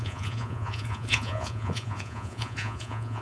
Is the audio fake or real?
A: fake